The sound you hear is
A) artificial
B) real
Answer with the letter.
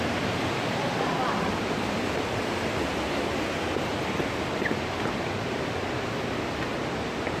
A